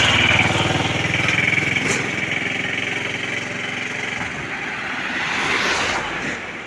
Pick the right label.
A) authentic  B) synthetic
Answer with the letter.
A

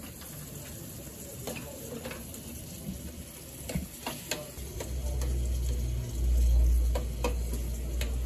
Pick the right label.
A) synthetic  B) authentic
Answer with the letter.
B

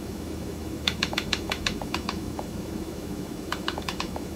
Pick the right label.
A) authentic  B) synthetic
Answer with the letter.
B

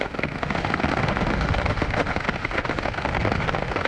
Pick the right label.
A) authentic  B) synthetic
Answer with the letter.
B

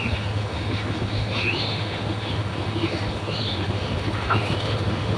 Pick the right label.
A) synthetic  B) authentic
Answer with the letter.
A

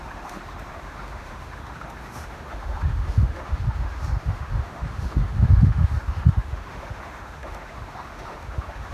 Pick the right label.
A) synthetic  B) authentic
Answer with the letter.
A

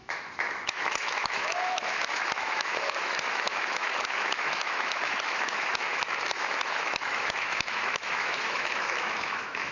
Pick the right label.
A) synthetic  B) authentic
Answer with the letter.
A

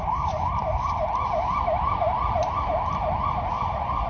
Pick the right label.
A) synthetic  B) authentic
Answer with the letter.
B